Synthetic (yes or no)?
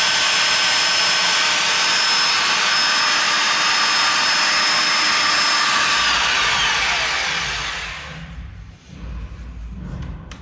no